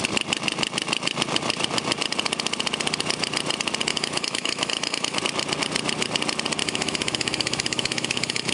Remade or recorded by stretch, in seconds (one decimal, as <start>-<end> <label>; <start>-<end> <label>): 0.0-3.9 recorded; 3.9-5.2 remade; 5.2-6.6 recorded; 6.6-8.5 remade